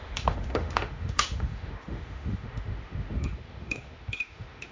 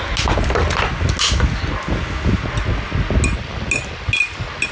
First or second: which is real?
second